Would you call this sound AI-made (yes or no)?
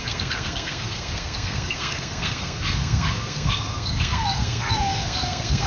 yes